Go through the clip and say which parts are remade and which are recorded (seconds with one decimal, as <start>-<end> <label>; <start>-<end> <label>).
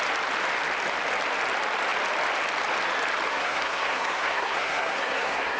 0.0-3.3 recorded; 3.3-5.6 remade